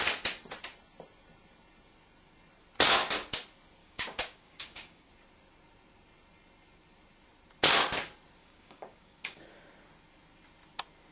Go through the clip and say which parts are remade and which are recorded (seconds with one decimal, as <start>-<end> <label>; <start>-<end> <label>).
0.0-3.8 recorded; 3.8-5.1 remade; 5.1-8.4 recorded; 8.4-9.4 remade; 9.4-11.1 recorded